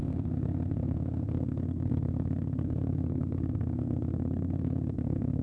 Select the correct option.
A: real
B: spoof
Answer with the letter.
B